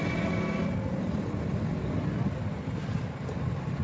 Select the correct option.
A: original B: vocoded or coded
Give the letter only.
A